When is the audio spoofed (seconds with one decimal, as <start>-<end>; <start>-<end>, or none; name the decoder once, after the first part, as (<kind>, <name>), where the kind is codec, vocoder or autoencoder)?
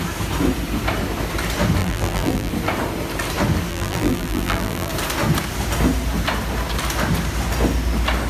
1.8-2.5 (vocoder, BigVGAN v2); 3.7-4.9